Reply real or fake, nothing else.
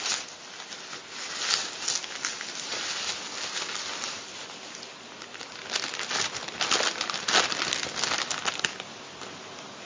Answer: real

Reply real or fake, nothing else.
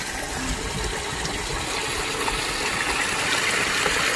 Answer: real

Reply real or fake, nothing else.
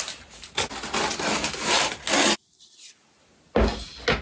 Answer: real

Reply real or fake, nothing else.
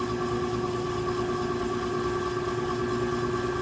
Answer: real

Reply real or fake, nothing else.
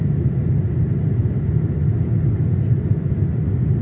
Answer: real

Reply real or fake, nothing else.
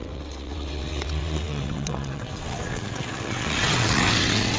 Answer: fake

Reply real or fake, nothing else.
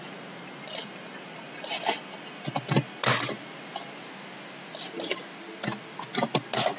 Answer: real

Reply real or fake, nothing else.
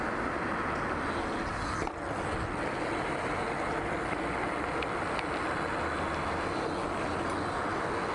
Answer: real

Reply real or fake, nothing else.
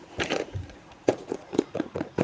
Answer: fake